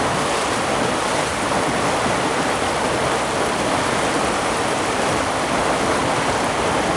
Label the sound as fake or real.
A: real